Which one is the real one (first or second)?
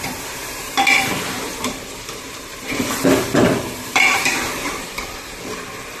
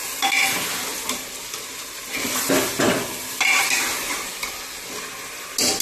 second